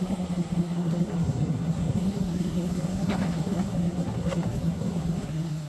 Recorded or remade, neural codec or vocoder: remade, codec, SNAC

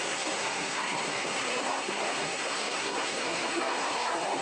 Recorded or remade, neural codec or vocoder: remade, codec, SNAC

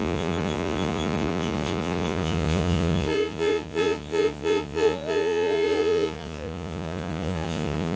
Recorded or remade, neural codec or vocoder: remade, vocoder, Vocos